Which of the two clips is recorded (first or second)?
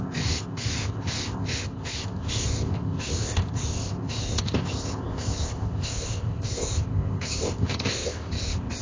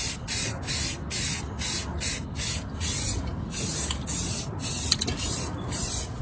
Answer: second